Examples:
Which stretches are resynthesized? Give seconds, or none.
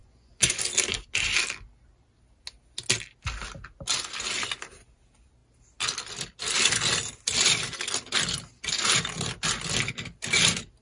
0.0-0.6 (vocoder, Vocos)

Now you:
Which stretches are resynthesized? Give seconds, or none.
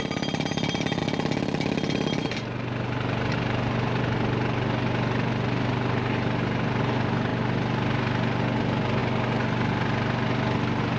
none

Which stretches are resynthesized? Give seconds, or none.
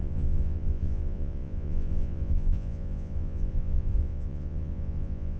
0.0-5.4 (vocoder, Vocos)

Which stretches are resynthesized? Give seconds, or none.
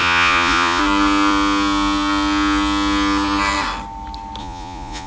0.0-0.8 (vocoder, Vocos); 4.4-5.1